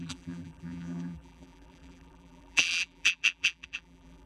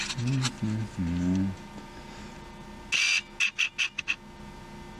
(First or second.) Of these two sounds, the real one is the second